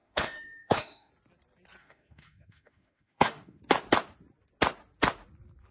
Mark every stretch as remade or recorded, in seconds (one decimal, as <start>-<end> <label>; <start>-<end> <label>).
0.0-1.1 remade; 1.1-1.8 recorded; 1.8-3.6 remade; 3.6-5.7 recorded